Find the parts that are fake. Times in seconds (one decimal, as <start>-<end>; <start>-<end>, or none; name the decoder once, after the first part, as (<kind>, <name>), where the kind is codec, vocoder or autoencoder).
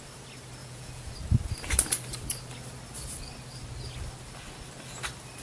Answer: 0.6-1.1 (vocoder, Vocos)